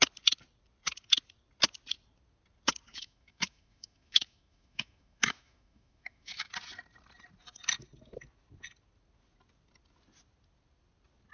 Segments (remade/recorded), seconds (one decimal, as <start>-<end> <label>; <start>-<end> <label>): 0.0-2.9 recorded; 2.9-6.5 remade; 6.5-11.3 recorded